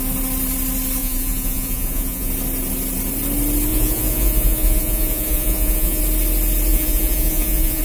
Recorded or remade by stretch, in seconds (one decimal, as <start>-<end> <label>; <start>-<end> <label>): 0.0-1.0 recorded; 1.0-2.3 remade; 2.3-3.7 recorded; 3.7-6.0 remade; 6.0-6.7 recorded; 6.7-7.8 remade